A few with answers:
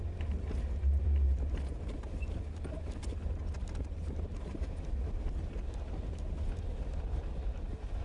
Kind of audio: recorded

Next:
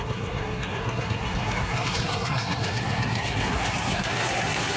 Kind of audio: remade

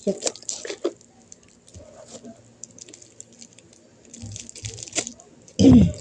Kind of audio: recorded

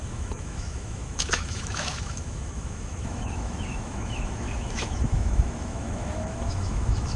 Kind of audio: remade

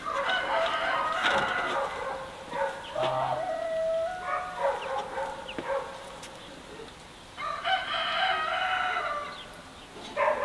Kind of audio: recorded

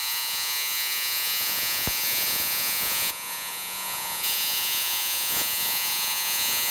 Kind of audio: remade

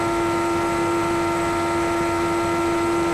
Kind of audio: remade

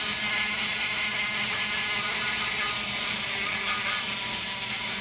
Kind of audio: recorded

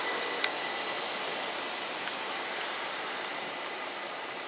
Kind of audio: recorded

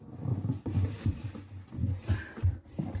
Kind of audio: recorded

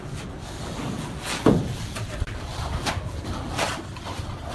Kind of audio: recorded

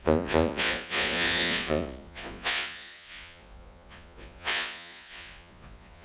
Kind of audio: remade